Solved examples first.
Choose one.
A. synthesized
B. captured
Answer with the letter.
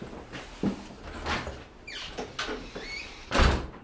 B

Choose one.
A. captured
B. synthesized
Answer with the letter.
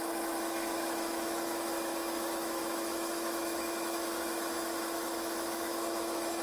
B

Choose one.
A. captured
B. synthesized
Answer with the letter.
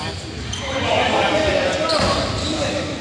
A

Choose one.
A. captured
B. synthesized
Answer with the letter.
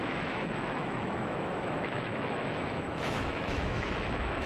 B